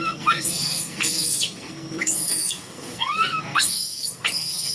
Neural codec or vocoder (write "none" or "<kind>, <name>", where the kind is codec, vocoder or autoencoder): codec, SNAC